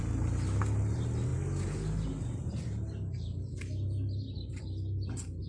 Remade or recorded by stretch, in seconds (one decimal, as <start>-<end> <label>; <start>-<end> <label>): 0.0-5.5 recorded